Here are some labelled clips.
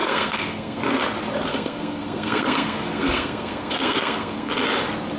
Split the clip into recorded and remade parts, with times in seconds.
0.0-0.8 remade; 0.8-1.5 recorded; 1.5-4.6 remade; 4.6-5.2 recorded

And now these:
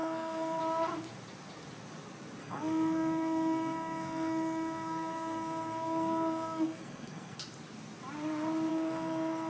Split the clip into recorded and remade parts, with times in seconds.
0.0-0.6 remade; 0.6-2.4 recorded; 2.4-7.4 remade; 7.4-8.7 recorded; 8.7-9.5 remade

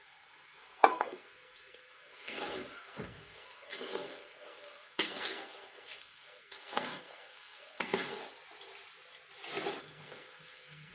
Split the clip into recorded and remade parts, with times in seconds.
0.0-8.2 remade; 8.2-9.8 recorded; 9.8-10.9 remade

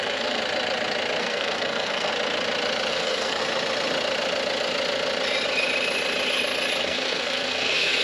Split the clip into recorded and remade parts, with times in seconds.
0.0-0.4 remade; 0.4-1.2 recorded; 1.2-2.1 remade; 2.1-2.9 recorded; 2.9-3.4 remade; 3.4-6.8 recorded; 6.8-8.0 remade

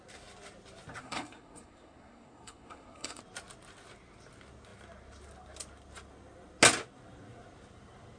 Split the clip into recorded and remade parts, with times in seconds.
0.0-1.0 recorded; 1.0-3.2 remade; 3.2-8.2 recorded

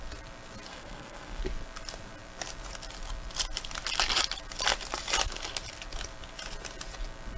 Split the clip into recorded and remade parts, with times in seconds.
0.0-0.7 recorded; 0.7-1.4 remade; 1.4-7.4 recorded